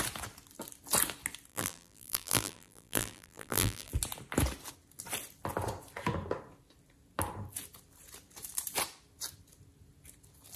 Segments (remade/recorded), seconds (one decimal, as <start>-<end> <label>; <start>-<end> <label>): 0.0-1.5 recorded; 1.5-3.9 remade; 3.9-10.6 recorded